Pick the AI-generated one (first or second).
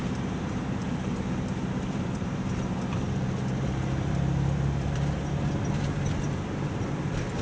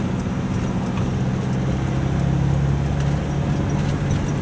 first